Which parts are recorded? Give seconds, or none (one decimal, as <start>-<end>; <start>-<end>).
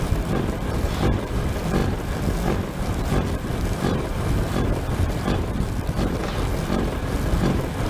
6.2-7.3